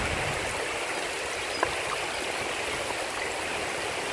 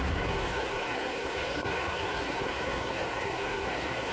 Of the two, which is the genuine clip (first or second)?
first